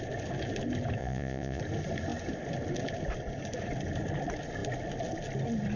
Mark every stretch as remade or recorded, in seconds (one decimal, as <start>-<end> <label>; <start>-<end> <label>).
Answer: 0.0-1.0 recorded; 1.0-1.6 remade; 1.6-5.8 recorded